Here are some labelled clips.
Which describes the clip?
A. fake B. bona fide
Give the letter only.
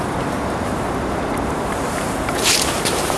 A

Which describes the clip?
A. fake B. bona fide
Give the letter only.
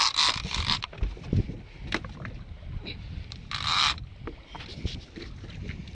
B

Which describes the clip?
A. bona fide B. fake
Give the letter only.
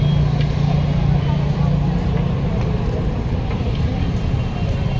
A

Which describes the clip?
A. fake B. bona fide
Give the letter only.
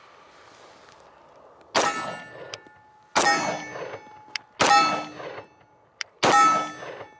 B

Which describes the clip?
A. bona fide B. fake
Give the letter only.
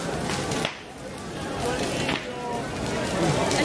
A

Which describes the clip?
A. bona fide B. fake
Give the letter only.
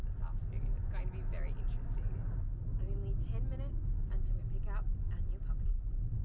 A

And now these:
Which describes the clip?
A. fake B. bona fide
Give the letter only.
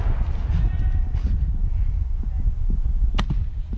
B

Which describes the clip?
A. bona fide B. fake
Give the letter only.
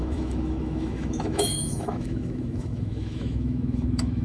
B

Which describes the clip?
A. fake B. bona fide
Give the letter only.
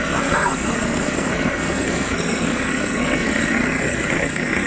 A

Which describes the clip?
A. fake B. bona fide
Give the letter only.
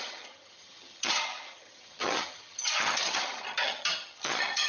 A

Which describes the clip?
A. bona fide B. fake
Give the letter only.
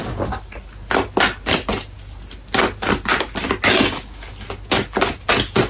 A